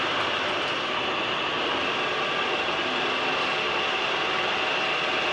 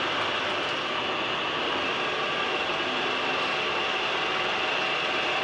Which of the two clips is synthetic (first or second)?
first